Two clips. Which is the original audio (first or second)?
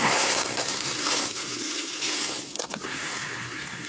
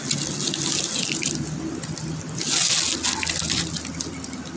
second